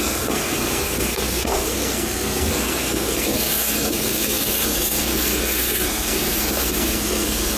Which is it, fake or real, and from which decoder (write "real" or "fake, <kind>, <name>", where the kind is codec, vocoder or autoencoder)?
fake, codec, SNAC